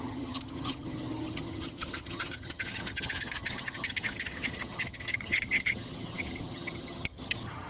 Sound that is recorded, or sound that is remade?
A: remade